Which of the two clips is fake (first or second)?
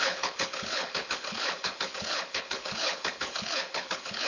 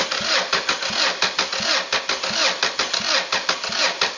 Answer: first